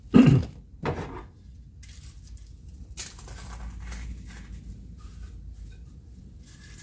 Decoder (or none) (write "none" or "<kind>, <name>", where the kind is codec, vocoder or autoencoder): none